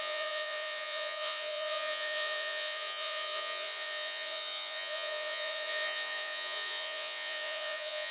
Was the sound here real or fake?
fake